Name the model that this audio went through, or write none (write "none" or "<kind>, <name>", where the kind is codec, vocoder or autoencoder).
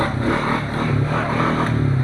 none